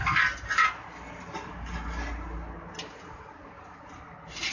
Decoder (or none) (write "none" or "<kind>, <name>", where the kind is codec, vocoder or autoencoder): none